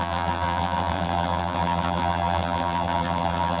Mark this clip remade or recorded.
remade